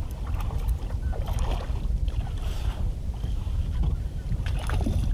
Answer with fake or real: real